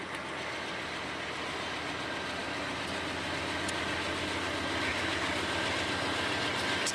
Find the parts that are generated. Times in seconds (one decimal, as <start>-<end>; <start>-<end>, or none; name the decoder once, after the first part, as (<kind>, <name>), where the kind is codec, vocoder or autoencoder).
4.9-5.8 (vocoder, BigVGAN v2)